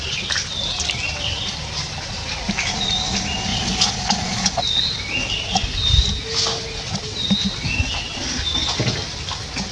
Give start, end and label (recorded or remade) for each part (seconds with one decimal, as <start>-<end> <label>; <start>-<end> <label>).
0.0-3.5 recorded; 3.5-4.5 remade; 4.5-9.7 recorded